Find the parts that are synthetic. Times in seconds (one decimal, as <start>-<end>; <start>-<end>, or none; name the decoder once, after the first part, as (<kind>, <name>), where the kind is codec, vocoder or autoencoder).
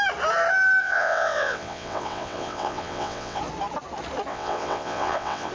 0.8-3.4 (vocoder, WaveNeXt); 4.3-5.5